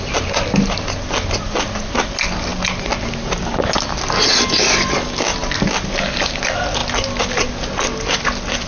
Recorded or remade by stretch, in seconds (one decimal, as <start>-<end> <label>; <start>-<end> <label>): 0.0-8.7 recorded

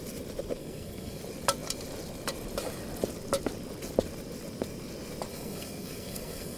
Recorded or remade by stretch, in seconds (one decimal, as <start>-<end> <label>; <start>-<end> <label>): 0.0-0.6 recorded; 0.6-1.2 remade; 1.2-5.3 recorded; 5.3-6.6 remade

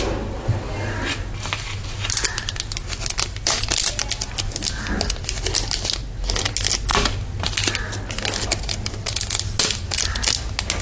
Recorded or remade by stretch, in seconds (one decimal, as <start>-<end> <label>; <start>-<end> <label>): 0.0-10.8 recorded

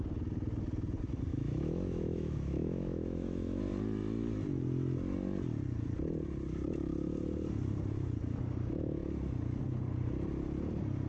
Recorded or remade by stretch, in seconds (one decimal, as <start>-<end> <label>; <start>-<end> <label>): 0.0-1.3 recorded; 1.3-3.6 remade; 3.6-11.1 recorded

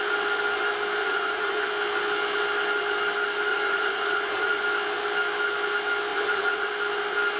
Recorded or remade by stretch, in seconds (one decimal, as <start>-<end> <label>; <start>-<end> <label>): 0.0-1.0 recorded; 1.0-1.7 remade; 1.7-3.5 recorded; 3.5-4.6 remade; 4.6-6.1 recorded; 6.1-6.7 remade; 6.7-7.4 recorded

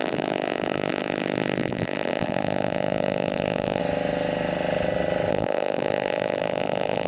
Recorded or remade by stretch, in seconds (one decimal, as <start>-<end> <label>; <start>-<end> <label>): 0.0-3.8 remade; 3.8-5.3 recorded; 5.3-7.1 remade